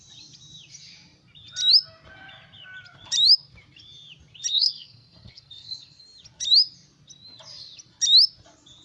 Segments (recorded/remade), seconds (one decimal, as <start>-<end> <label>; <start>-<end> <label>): 0.0-4.5 recorded; 4.5-6.0 remade; 6.0-8.8 recorded